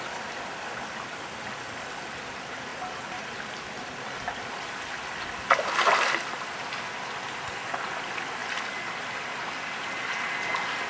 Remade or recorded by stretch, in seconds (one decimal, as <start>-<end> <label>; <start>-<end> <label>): 0.0-10.9 recorded